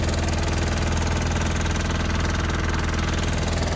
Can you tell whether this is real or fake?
real